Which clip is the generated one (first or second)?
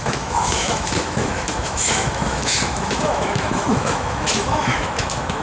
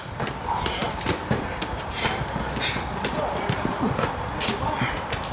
first